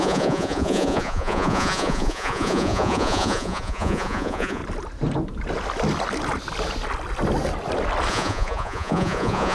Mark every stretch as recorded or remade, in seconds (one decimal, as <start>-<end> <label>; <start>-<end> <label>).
0.0-4.6 remade; 4.6-8.1 recorded; 8.1-9.5 remade